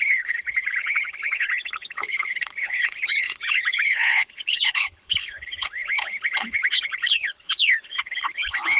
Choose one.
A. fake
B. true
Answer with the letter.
A